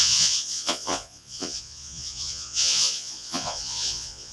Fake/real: fake